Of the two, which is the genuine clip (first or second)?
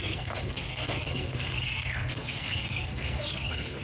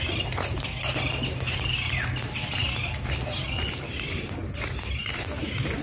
second